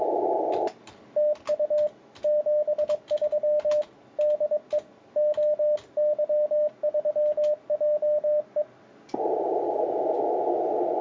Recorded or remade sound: recorded